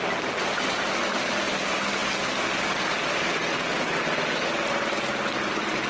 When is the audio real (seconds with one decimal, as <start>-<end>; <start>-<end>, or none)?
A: 0.0-5.9